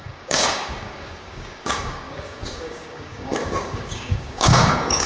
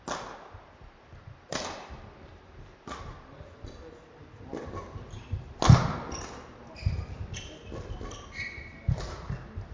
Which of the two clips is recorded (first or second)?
second